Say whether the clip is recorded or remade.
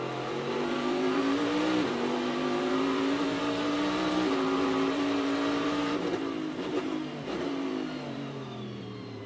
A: remade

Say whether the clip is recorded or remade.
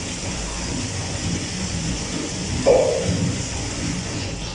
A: remade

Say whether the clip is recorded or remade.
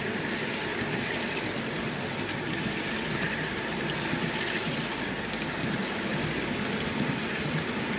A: recorded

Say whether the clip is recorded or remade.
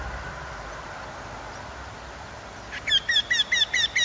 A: recorded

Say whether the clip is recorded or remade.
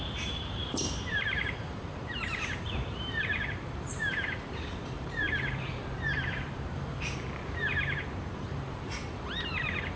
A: remade